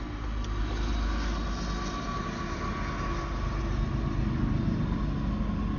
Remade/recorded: recorded